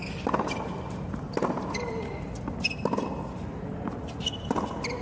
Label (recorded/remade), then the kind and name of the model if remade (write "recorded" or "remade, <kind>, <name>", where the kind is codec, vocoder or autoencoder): recorded